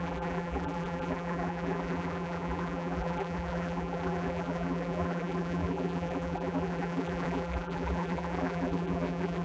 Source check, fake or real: fake